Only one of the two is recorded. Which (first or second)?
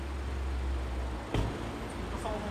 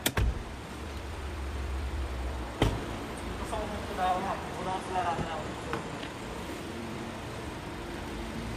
first